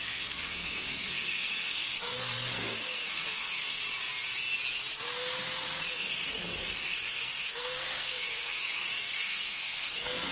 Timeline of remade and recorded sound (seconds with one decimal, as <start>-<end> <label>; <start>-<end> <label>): 0.0-3.8 remade; 3.8-5.9 recorded; 5.9-10.3 remade